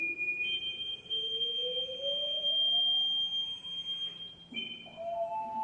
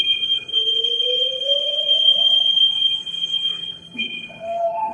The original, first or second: first